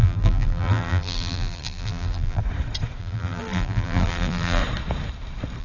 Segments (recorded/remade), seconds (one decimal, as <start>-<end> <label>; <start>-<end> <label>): 0.0-2.4 remade; 2.4-3.0 recorded; 3.0-4.6 remade; 4.6-5.6 recorded